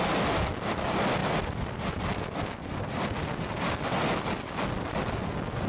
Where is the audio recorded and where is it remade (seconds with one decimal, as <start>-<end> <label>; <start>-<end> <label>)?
0.0-5.7 recorded